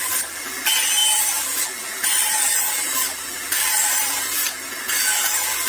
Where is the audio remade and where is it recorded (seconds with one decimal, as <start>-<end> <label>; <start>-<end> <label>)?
0.0-4.4 remade; 4.4-5.0 recorded; 5.0-5.7 remade